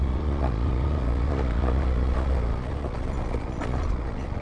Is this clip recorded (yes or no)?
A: no